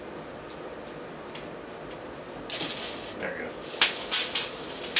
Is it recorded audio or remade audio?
recorded